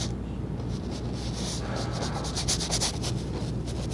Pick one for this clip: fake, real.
real